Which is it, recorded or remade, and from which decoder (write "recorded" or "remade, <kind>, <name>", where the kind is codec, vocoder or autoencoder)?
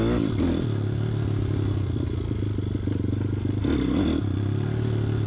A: recorded